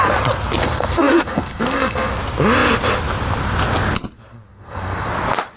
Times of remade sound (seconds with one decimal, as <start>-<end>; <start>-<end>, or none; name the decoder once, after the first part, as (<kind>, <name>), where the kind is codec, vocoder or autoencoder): 0.6-2.1 (codec, SNAC); 4.5-5.1